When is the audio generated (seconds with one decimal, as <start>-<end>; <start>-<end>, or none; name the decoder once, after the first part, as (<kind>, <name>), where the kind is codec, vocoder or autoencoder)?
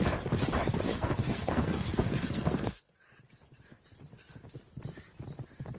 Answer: 0.9-2.9 (codec, SNAC)